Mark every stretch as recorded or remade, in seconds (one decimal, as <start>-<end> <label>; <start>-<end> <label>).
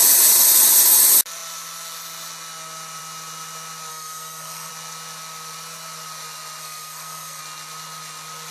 0.0-3.9 recorded; 3.9-4.7 remade; 4.7-6.6 recorded; 6.6-7.4 remade; 7.4-8.5 recorded